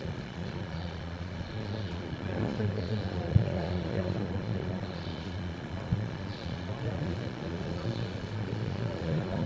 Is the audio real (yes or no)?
no